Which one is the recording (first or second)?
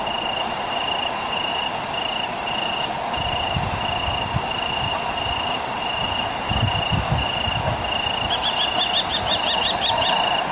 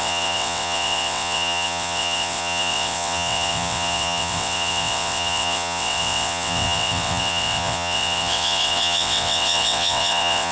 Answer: first